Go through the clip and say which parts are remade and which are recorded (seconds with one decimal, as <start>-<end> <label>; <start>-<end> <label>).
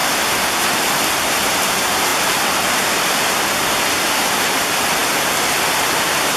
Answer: 0.0-5.0 remade; 5.0-5.8 recorded; 5.8-6.4 remade